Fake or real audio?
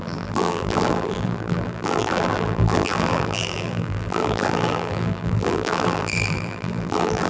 fake